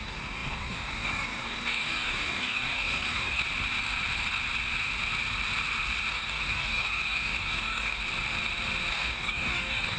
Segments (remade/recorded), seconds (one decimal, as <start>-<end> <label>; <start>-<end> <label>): 0.0-3.4 remade; 3.4-6.1 recorded; 6.1-8.0 remade; 8.0-8.9 recorded; 8.9-10.0 remade